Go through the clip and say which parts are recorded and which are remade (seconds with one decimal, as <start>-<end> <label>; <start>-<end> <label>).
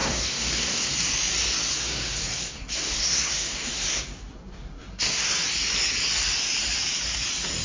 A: 0.0-1.1 remade; 1.1-1.7 recorded; 1.7-5.4 remade; 5.4-7.6 recorded